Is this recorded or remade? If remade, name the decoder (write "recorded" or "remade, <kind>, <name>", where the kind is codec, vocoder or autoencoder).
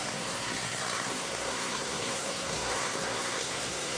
remade, codec, SNAC